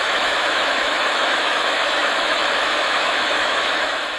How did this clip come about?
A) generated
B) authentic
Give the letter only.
A